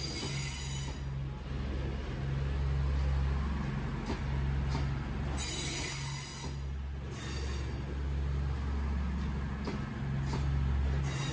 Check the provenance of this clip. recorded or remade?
recorded